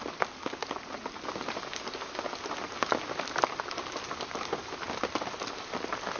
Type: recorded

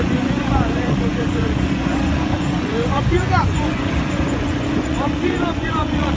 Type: remade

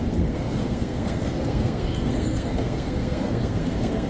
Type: remade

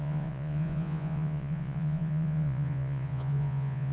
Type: remade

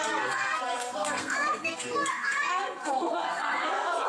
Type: remade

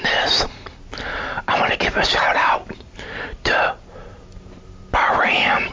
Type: remade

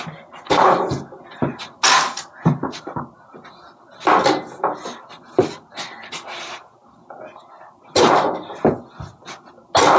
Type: recorded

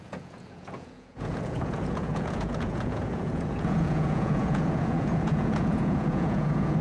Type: remade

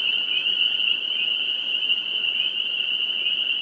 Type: recorded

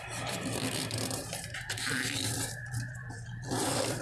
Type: remade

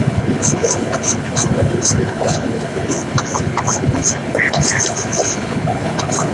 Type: remade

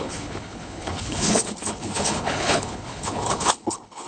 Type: remade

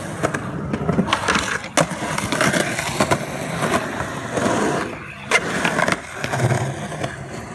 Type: recorded